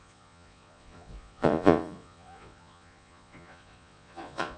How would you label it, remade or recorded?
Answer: remade